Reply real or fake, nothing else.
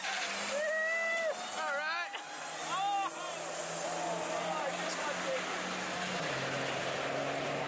real